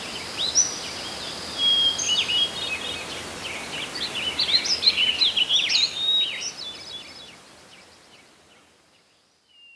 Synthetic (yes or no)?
no